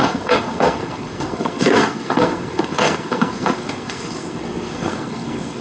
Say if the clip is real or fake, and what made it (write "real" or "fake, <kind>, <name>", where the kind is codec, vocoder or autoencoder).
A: fake, codec, SNAC